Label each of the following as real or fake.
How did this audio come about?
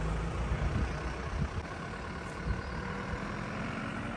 real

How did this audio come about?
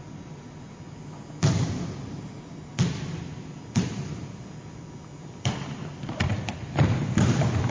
real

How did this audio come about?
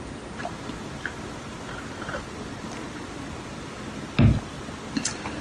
real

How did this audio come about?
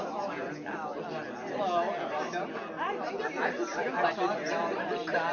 real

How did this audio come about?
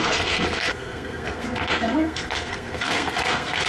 fake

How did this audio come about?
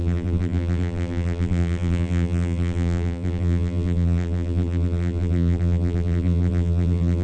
fake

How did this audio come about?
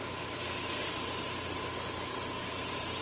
real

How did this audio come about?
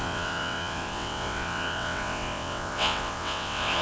fake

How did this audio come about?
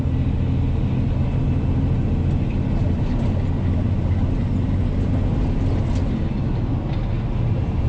real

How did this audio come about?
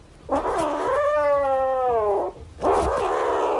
real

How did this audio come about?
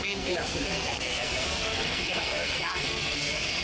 fake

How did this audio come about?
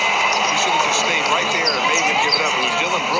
real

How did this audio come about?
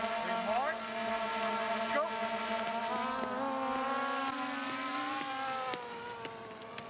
real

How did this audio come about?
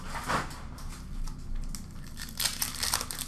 real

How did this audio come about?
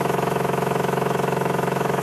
fake